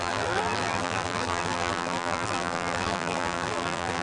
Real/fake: fake